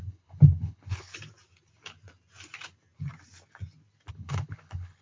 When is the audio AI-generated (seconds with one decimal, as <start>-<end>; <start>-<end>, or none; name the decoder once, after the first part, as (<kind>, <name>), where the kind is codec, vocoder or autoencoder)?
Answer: 0.0-1.1 (codec, HILCodec); 4.1-5.0